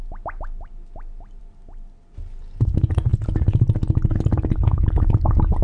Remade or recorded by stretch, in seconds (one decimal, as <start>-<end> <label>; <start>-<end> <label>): 0.0-5.6 recorded